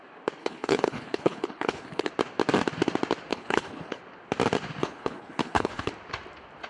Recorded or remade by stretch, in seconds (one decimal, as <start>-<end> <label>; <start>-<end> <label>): 0.0-0.4 recorded; 0.4-2.1 remade; 2.1-3.3 recorded; 3.3-4.0 remade; 4.0-4.8 recorded; 4.8-5.9 remade; 5.9-6.7 recorded